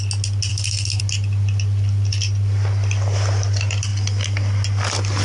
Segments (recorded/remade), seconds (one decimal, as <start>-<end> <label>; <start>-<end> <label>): 0.0-0.5 recorded; 0.5-1.0 remade; 1.0-5.2 recorded